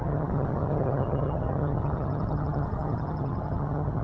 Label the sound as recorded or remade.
remade